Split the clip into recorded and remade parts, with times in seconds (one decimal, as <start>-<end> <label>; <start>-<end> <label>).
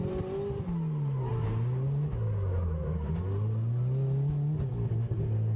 0.0-5.6 recorded